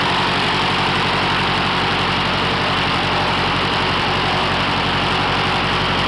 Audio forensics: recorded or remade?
remade